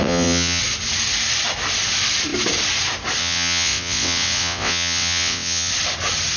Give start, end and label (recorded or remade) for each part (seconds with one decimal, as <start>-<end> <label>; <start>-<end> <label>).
0.0-0.6 remade; 0.6-3.2 recorded; 3.2-5.7 remade; 5.7-6.4 recorded